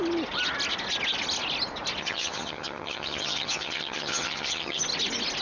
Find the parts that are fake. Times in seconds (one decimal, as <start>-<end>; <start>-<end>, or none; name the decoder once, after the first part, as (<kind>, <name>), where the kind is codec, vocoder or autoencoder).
2.0-4.8 (vocoder, HiFi-GAN)